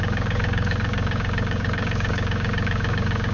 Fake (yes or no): yes